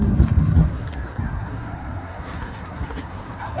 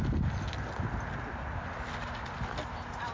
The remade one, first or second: first